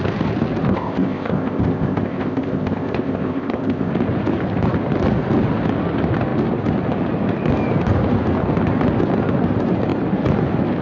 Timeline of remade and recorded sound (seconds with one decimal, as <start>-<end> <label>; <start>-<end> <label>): 0.0-0.7 recorded; 0.7-3.9 remade; 3.9-10.8 recorded